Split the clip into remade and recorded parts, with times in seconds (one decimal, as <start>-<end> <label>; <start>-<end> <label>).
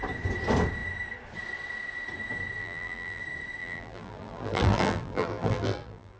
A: 0.0-2.6 recorded; 2.6-3.2 remade; 3.2-3.6 recorded; 3.6-6.2 remade